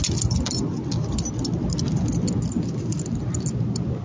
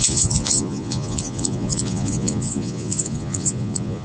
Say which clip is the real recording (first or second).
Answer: first